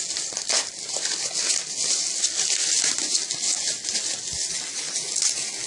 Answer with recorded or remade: recorded